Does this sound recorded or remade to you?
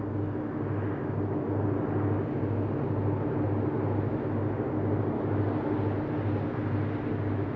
recorded